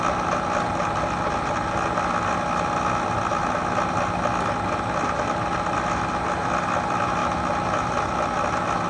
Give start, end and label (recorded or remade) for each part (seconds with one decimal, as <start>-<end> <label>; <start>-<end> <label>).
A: 0.0-8.9 recorded